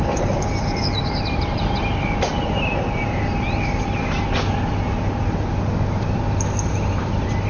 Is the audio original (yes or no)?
yes